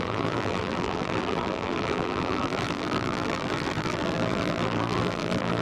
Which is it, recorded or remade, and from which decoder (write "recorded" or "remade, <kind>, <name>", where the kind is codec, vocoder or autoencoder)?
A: remade, vocoder, BigVGAN v2